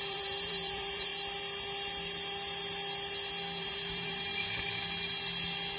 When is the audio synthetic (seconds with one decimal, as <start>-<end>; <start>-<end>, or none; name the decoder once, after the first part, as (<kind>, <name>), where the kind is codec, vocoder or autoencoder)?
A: 0.0-1.1 (vocoder, BigVGAN v2); 3.6-4.3